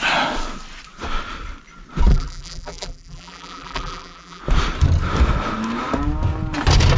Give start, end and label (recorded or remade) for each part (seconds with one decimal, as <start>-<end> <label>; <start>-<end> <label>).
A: 0.0-2.1 recorded; 2.1-4.4 remade; 4.4-7.0 recorded